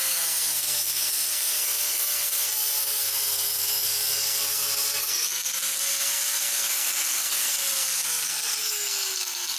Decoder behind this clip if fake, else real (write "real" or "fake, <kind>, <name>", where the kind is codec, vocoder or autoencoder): fake, codec, SNAC